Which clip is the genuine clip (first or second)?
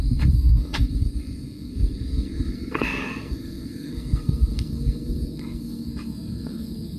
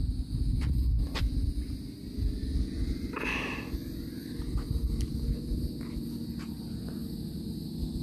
second